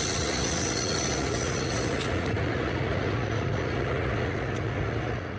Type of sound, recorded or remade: remade